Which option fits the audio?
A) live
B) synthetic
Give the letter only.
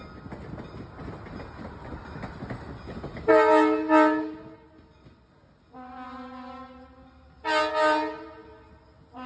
A